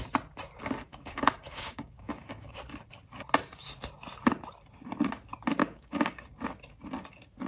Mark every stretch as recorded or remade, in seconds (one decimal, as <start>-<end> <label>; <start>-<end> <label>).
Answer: 0.0-0.9 recorded; 0.9-2.5 remade; 2.5-5.6 recorded; 5.6-6.3 remade; 6.3-7.5 recorded